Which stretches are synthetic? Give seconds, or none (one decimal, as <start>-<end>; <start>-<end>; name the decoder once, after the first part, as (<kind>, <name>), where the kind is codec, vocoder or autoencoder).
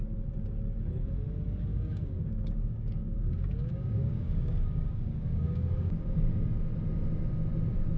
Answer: 1.7-6.5 (codec, DAC)